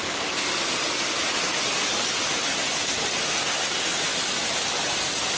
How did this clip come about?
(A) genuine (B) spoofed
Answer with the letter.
A